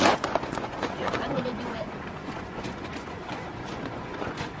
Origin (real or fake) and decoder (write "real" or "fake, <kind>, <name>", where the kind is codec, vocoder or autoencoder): fake, vocoder, Vocos